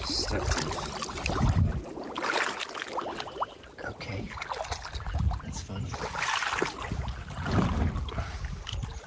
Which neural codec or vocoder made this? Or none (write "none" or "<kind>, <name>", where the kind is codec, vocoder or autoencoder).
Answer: none